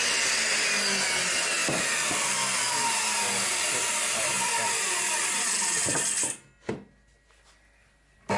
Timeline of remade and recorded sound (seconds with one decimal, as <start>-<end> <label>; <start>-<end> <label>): 0.0-8.4 recorded